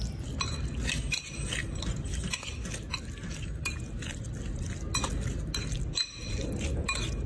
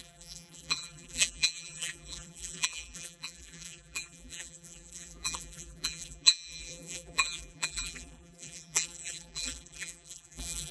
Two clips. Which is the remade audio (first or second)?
second